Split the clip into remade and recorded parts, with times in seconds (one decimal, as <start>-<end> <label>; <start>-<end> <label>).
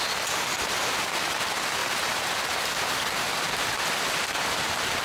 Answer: 0.0-5.0 recorded